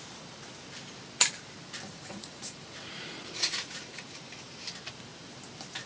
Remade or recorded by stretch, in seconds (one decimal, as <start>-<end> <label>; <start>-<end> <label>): 0.0-1.9 recorded; 1.9-4.2 remade; 4.2-5.9 recorded

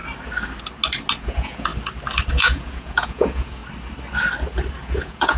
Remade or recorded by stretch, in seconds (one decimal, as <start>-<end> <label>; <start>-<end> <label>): 0.0-1.2 recorded; 1.2-1.7 remade; 1.7-2.3 recorded; 2.3-3.6 remade; 3.6-4.8 recorded; 4.8-5.4 remade

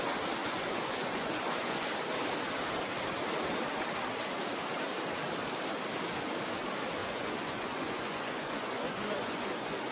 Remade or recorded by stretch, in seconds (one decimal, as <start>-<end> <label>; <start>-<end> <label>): 0.0-0.4 recorded; 0.4-1.9 remade; 1.9-7.0 recorded; 7.0-9.9 remade

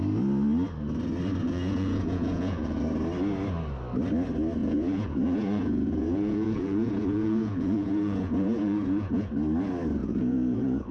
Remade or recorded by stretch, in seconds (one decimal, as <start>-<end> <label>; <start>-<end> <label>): 0.0-1.4 recorded; 1.4-2.8 remade; 2.8-4.6 recorded; 4.6-9.3 remade; 9.3-10.0 recorded; 10.0-10.9 remade

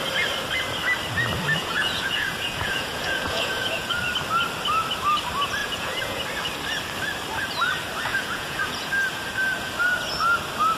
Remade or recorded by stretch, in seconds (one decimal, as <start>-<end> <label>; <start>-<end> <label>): 0.0-1.6 recorded; 1.6-4.0 remade; 4.0-5.6 recorded; 5.6-6.2 remade; 6.2-8.1 recorded; 8.1-8.9 remade; 8.9-10.8 recorded